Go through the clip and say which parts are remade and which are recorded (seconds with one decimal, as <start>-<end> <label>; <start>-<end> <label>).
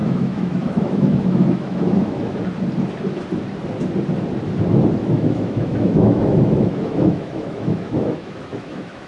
0.0-2.4 remade; 2.4-5.0 recorded; 5.0-9.1 remade